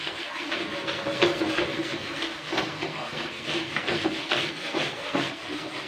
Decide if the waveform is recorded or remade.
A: remade